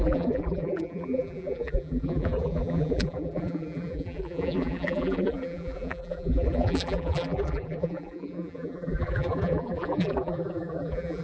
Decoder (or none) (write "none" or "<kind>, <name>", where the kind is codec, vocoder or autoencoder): vocoder, BigVGAN v2